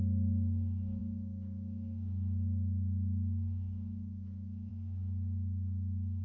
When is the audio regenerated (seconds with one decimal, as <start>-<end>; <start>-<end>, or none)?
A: none